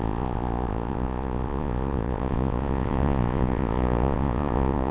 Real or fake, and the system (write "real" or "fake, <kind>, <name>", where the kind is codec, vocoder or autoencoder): fake, vocoder, Vocos